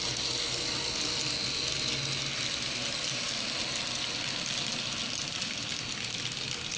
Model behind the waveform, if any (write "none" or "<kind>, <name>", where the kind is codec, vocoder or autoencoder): none